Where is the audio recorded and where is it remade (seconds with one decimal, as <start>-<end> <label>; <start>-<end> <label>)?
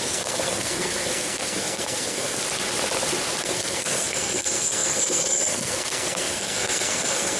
0.0-2.4 remade; 2.4-3.4 recorded; 3.4-7.4 remade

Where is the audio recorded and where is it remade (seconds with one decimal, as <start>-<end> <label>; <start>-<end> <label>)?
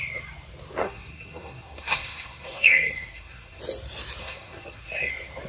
0.0-0.8 recorded; 0.8-3.6 remade; 3.6-4.2 recorded; 4.2-5.1 remade; 5.1-5.5 recorded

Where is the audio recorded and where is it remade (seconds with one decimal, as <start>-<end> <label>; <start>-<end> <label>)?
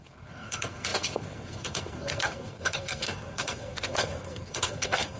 0.0-5.2 remade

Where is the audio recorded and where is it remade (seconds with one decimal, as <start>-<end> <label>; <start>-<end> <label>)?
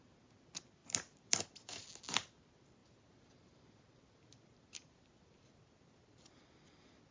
0.0-7.1 recorded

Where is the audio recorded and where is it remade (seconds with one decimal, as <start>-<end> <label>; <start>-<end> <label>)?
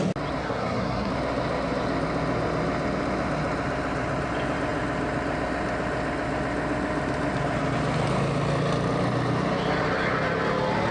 0.0-0.4 recorded; 0.4-1.1 remade; 1.1-10.9 recorded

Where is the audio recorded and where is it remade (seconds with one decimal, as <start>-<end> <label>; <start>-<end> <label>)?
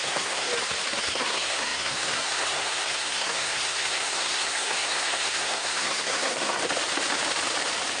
0.0-0.5 remade; 0.5-1.0 recorded; 1.0-6.6 remade; 6.6-8.0 recorded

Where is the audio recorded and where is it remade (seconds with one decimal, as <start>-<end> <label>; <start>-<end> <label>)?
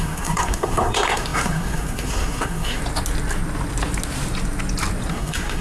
0.0-2.8 remade; 2.8-5.1 recorded; 5.1-5.6 remade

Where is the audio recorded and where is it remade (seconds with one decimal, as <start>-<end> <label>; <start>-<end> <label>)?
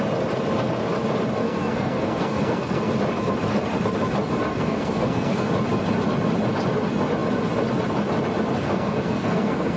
0.0-1.4 recorded; 1.4-2.9 remade; 2.9-4.5 recorded; 4.5-5.5 remade; 5.5-8.6 recorded; 8.6-9.8 remade